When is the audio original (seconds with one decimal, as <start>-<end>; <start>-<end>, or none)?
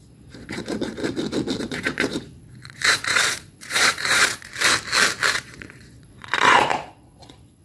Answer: 1.0-1.6; 4.5-5.3